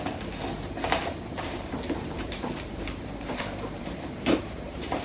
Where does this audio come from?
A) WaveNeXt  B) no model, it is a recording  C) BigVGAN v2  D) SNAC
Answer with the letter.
C